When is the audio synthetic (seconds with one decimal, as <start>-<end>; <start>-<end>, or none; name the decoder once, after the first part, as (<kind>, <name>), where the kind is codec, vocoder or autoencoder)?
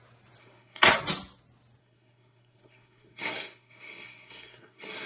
0.4-0.9 (codec, SNAC); 1.8-5.1